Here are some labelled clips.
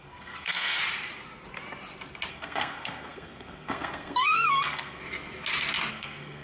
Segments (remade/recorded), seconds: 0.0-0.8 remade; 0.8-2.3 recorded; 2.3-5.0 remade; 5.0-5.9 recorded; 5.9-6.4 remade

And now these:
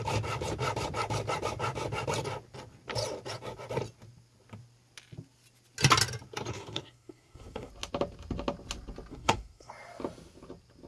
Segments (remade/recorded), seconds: 0.0-6.5 recorded; 6.5-7.7 remade; 7.7-9.1 recorded; 9.1-9.7 remade; 9.7-10.9 recorded

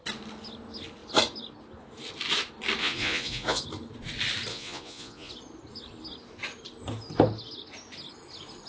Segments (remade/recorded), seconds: 0.0-2.8 recorded; 2.8-3.6 remade; 3.6-4.5 recorded; 4.5-5.3 remade; 5.3-8.7 recorded

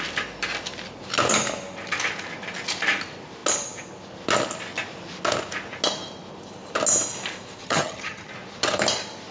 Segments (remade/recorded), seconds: 0.0-7.6 recorded; 7.6-8.3 remade; 8.3-9.3 recorded

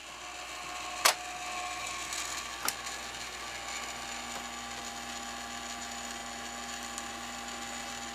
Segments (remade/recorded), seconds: 0.0-8.1 recorded

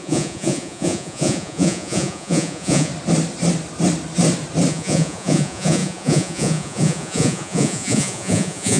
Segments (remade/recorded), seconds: 0.0-2.9 remade; 2.9-4.7 recorded; 4.7-8.8 remade

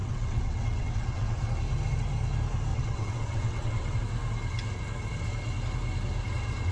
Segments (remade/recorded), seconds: 0.0-1.4 remade; 1.4-2.7 recorded; 2.7-4.0 remade; 4.0-6.7 recorded

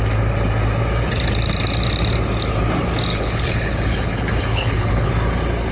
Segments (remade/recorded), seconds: 0.0-3.1 recorded; 3.1-5.1 remade; 5.1-5.7 recorded